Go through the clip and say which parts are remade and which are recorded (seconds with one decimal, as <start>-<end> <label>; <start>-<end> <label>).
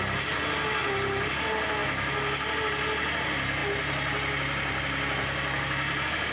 0.0-3.6 recorded; 3.6-6.3 remade